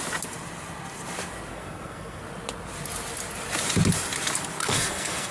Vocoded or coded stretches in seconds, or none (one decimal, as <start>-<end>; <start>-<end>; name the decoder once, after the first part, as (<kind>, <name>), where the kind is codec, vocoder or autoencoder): 1.5-2.2 (codec, SNAC); 4.6-5.3